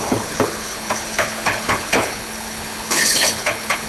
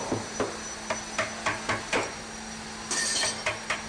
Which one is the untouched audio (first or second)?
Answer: second